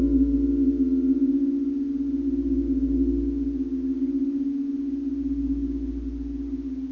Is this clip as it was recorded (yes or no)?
yes